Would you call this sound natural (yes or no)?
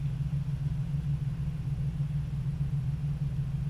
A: yes